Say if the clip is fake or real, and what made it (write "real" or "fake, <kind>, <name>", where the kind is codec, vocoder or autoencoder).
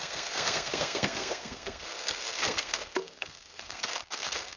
fake, codec, SNAC